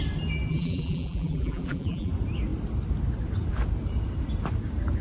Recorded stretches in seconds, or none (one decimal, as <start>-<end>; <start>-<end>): 0.0-0.5; 2.1-5.0